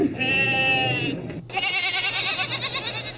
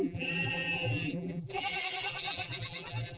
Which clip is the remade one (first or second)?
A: second